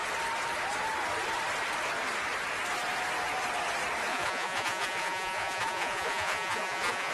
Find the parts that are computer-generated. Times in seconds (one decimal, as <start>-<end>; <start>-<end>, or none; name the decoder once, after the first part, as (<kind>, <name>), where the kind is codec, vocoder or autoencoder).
4.1-7.1 (vocoder, Vocos)